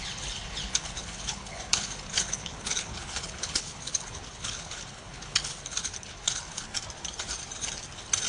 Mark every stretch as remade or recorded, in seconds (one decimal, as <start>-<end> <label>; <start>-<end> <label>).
0.0-6.7 remade; 6.7-8.3 recorded